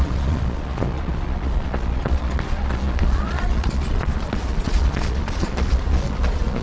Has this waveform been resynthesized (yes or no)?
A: yes